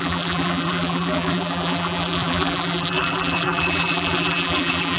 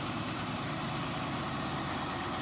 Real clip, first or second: second